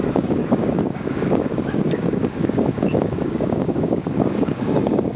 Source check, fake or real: fake